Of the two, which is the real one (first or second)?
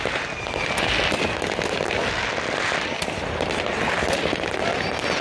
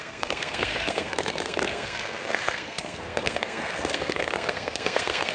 first